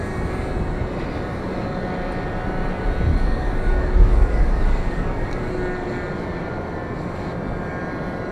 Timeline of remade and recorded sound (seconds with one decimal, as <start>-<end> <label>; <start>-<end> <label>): 0.0-3.1 recorded; 3.1-5.5 remade; 5.5-8.3 recorded

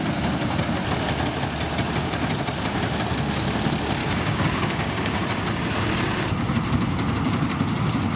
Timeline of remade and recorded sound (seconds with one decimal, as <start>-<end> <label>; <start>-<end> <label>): 0.0-4.0 recorded; 4.0-5.2 remade; 5.2-8.2 recorded

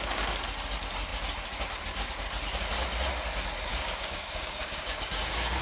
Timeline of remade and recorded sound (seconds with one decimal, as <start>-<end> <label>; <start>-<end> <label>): 0.0-3.7 recorded; 3.7-5.6 remade

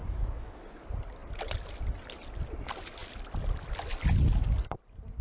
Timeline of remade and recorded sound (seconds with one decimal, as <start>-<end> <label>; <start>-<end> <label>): 0.0-0.5 remade; 0.5-5.2 recorded